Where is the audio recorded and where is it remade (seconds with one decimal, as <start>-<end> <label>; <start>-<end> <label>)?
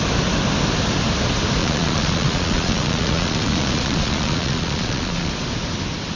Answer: 0.0-1.6 recorded; 1.6-5.3 remade; 5.3-6.2 recorded